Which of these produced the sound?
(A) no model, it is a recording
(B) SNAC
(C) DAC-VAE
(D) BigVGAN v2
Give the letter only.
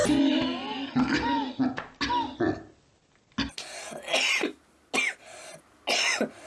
A